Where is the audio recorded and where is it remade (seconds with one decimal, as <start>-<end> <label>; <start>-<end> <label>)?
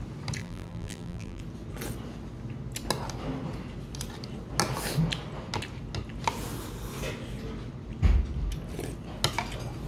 0.0-0.4 recorded; 0.4-1.4 remade; 1.4-9.9 recorded